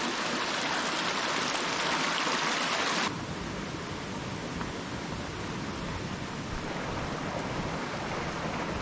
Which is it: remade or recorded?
recorded